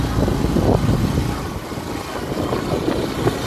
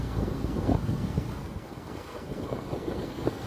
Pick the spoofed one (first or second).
second